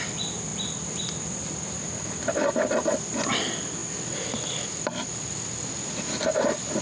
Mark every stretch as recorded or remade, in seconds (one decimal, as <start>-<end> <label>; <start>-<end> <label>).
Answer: 0.0-6.8 recorded